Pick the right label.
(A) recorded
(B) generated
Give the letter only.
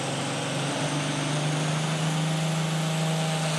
A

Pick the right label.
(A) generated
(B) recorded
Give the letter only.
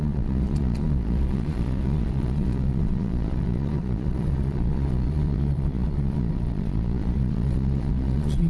A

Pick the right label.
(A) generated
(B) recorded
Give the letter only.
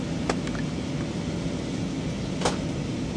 B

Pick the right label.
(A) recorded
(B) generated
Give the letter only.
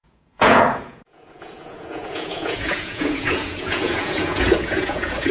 B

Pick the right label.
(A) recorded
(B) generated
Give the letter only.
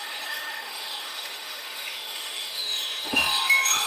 B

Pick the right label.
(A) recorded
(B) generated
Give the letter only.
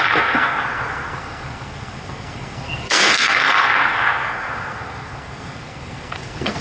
B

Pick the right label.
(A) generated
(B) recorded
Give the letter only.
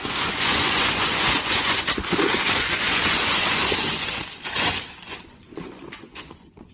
A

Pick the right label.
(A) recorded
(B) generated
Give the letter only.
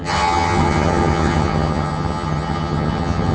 B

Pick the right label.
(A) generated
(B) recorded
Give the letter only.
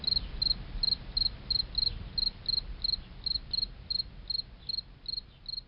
B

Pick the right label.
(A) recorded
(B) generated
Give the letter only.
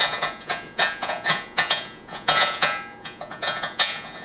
B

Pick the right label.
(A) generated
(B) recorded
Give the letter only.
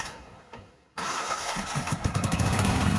A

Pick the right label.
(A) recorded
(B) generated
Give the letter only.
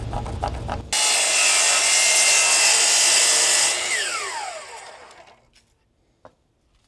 A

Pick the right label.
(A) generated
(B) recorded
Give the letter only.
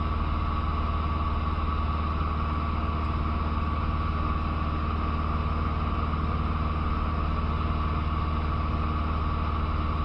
B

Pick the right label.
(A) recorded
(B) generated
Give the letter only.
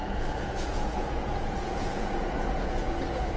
B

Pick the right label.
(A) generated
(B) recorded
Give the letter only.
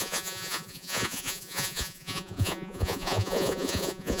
A